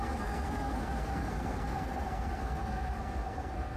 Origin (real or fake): fake